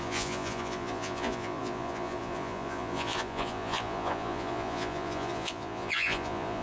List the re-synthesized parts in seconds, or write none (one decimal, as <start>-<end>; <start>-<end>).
0.0-6.6